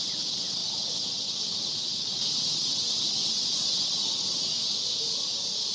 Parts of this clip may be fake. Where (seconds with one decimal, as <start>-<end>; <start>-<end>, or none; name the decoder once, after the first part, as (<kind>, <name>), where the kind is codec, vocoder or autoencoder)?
0.0-4.6 (vocoder, WaveNeXt)